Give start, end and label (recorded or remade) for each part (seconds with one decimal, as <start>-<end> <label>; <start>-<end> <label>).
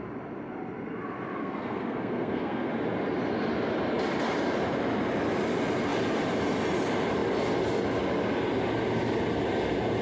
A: 0.0-1.4 recorded; 1.4-2.7 remade; 2.7-10.0 recorded